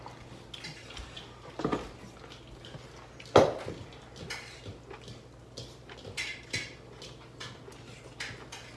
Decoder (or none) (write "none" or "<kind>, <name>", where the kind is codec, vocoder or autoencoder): none